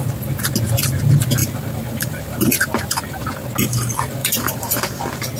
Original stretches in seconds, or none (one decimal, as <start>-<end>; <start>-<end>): 0.0-1.4; 3.3-4.2; 5.0-5.4